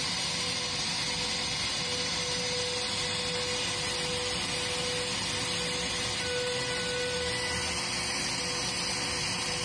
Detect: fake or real real